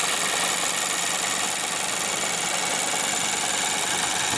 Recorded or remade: recorded